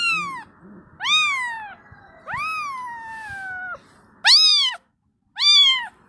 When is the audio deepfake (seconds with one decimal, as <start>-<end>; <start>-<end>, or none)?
none

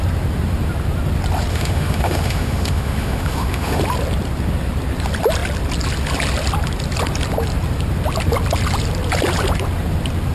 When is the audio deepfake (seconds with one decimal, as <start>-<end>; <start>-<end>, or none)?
1.5-3.8

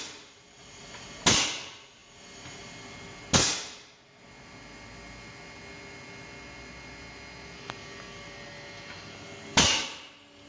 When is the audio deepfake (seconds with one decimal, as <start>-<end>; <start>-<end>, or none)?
none